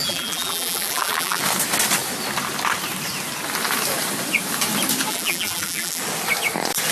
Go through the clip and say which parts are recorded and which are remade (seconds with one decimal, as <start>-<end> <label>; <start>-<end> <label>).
0.0-1.4 remade; 1.4-5.1 recorded; 5.1-6.0 remade; 6.0-6.9 recorded

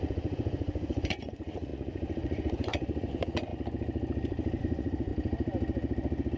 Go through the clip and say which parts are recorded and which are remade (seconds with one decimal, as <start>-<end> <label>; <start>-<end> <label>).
0.0-3.5 remade; 3.5-4.6 recorded; 4.6-5.1 remade; 5.1-6.4 recorded

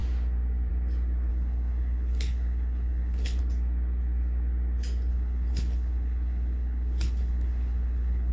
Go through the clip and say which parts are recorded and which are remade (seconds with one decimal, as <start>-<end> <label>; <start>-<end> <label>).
0.0-1.3 recorded; 1.3-3.4 remade; 3.4-5.1 recorded; 5.1-8.3 remade

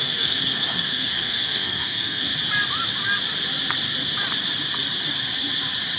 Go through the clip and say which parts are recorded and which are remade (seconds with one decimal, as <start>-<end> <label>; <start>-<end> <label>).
0.0-2.3 remade; 2.3-6.0 recorded